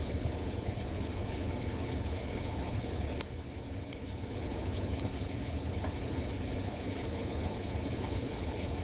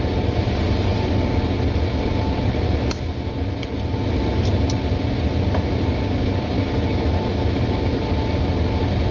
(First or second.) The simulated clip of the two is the first